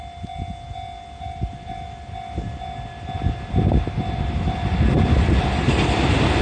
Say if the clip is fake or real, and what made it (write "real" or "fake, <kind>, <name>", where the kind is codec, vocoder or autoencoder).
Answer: real